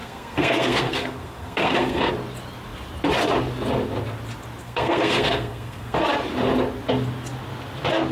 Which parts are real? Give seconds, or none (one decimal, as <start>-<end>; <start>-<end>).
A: 2.1-4.6; 6.0-8.1